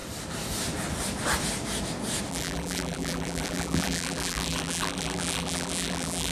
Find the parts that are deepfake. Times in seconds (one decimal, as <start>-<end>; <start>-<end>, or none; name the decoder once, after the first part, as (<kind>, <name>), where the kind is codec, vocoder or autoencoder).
2.3-6.3 (vocoder, BigVGAN v2)